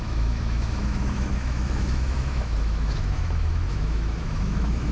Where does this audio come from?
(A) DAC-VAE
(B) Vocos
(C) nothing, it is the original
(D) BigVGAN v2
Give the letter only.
A